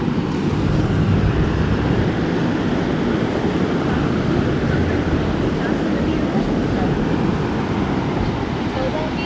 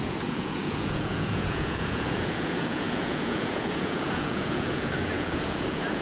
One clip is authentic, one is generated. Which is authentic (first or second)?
first